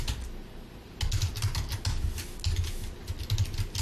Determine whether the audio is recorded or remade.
recorded